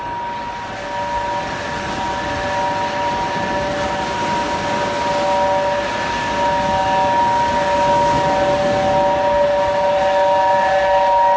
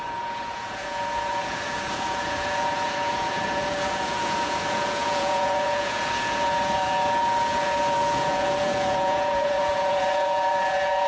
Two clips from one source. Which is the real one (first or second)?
first